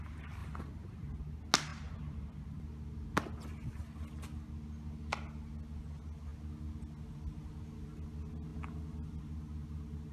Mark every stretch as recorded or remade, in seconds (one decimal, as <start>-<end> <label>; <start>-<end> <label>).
0.0-0.4 recorded; 0.4-1.2 remade; 1.2-1.7 recorded; 1.7-2.2 remade; 2.2-10.1 recorded